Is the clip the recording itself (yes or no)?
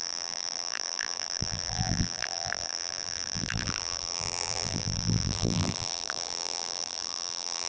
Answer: no